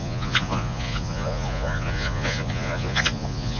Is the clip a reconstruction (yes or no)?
yes